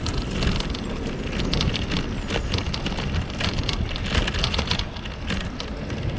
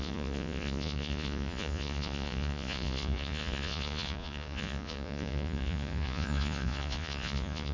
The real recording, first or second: first